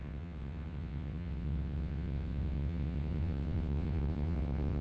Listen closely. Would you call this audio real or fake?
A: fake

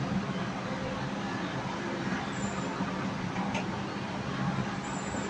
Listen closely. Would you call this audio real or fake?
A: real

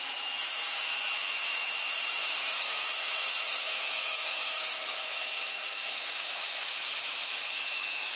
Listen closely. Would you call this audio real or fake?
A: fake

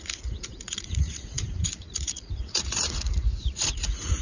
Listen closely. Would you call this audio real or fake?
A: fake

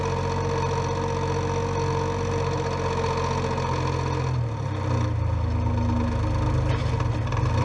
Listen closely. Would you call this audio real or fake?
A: real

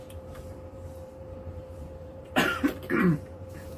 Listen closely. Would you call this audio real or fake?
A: fake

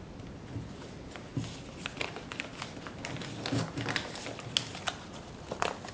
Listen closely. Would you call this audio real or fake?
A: real